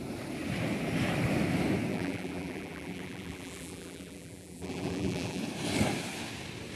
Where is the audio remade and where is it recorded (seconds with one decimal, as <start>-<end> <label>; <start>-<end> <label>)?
0.0-1.9 recorded; 1.9-5.4 remade; 5.4-6.8 recorded